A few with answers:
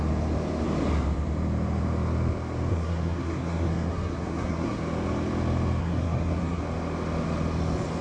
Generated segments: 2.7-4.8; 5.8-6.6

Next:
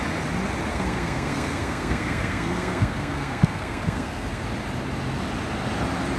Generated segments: 0.7-4.4

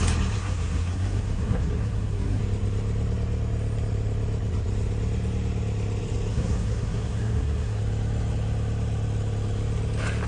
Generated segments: 0.4-2.4; 6.3-7.8

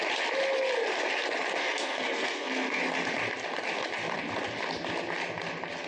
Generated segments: 1.6-2.8

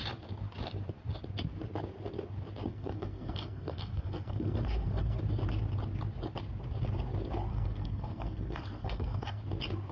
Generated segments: 2.7-5.2; 7.5-9.4

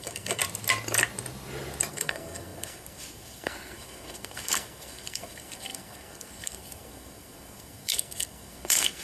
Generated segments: 0.0-0.4; 1.9-9.0

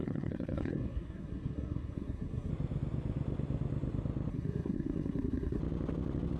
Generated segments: 0.0-2.5; 4.3-5.6